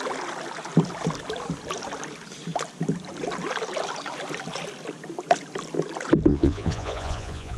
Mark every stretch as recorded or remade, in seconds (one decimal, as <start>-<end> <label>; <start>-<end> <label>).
0.0-6.3 recorded; 6.3-7.6 remade